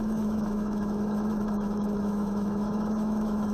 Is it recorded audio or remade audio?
remade